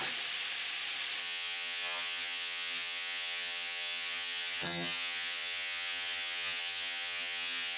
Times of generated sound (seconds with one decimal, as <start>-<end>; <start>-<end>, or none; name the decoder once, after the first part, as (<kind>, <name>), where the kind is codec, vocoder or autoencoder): 1.2-7.8 (vocoder, HiFi-GAN)